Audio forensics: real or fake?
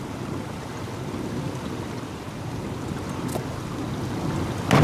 real